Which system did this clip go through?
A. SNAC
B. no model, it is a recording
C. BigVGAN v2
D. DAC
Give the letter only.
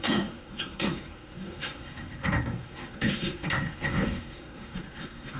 A